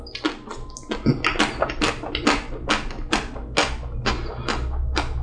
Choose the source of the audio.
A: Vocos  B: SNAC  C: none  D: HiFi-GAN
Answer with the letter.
C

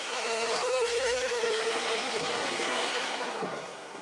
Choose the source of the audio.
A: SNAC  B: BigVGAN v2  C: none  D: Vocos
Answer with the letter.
A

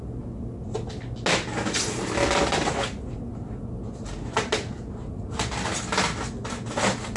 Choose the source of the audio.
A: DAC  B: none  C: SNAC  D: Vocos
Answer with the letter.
B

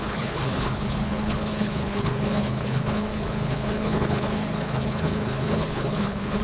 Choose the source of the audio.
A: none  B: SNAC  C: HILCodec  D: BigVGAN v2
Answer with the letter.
C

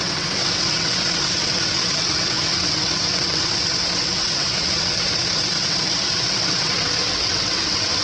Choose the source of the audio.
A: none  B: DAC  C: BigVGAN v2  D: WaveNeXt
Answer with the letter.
D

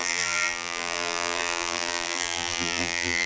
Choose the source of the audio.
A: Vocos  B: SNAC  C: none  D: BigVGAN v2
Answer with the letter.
D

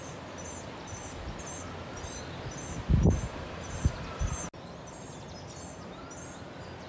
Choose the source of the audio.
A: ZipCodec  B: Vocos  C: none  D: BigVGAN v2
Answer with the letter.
C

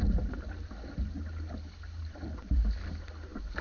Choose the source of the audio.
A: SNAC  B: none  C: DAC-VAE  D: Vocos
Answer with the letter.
B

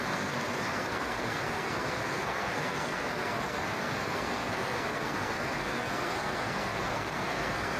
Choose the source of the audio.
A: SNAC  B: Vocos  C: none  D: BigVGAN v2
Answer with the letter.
A